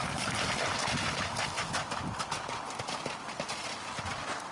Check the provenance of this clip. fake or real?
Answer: real